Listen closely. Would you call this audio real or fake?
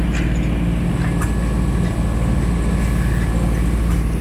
real